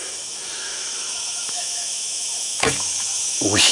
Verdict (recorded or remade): remade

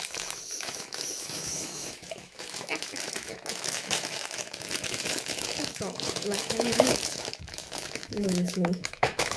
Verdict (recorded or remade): remade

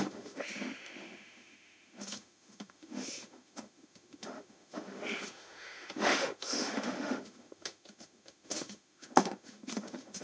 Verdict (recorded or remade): remade